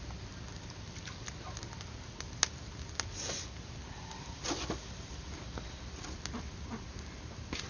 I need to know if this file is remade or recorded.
recorded